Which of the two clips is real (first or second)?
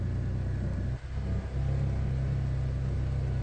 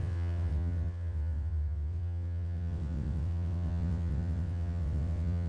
first